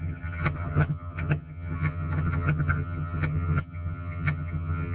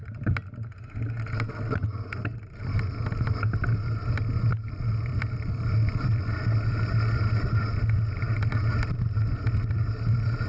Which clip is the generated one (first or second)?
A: first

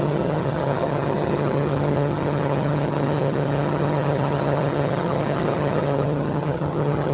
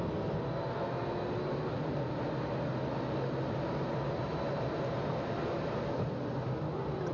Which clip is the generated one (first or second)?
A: first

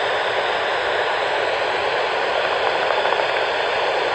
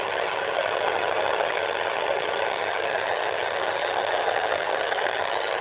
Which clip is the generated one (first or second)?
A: second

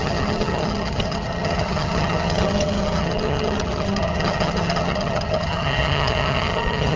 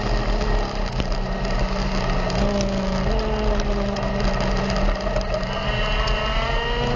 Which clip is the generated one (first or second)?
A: first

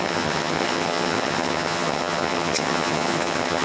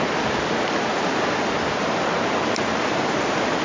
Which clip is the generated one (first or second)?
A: first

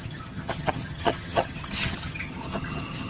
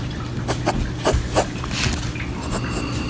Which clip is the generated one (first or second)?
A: first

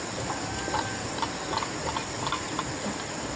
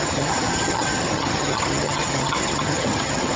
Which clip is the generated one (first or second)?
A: second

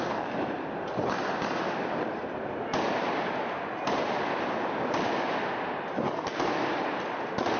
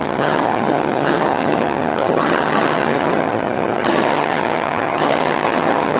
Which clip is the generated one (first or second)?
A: second